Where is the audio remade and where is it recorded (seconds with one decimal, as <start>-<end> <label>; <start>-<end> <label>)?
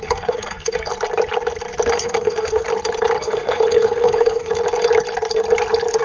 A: 0.0-0.9 remade; 0.9-1.9 recorded; 1.9-2.7 remade; 2.7-3.2 recorded; 3.2-4.5 remade; 4.5-6.0 recorded